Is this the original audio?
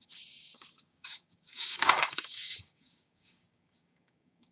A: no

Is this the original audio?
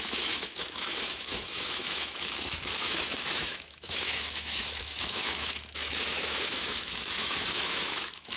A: no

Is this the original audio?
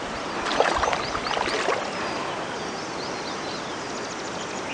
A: yes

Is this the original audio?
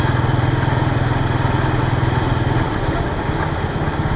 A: yes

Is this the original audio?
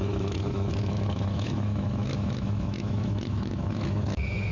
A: no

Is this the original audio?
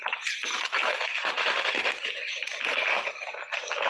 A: no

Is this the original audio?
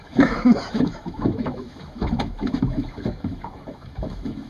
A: no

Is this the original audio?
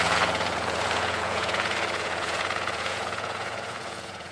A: no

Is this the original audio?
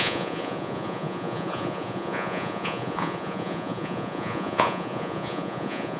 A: no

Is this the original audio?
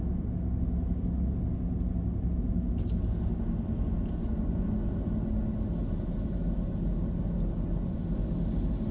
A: yes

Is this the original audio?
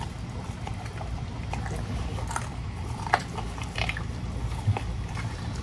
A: no